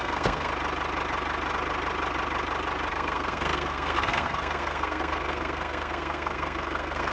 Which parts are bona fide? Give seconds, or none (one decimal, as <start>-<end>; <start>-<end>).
0.5-2.9